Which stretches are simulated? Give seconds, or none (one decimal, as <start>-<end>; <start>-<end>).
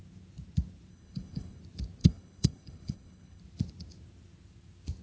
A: 0.9-1.6; 2.0-3.4